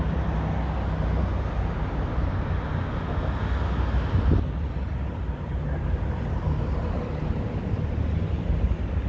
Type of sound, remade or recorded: recorded